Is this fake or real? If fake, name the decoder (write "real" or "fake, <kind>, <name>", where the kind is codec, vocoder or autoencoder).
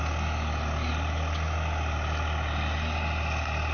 real